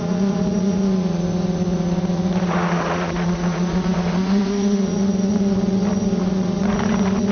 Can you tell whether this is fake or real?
fake